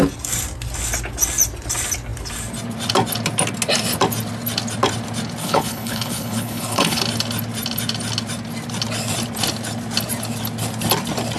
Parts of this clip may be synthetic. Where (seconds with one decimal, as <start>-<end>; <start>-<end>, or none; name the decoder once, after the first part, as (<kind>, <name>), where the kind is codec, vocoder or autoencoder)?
5.4-7.0 (codec, HILCodec)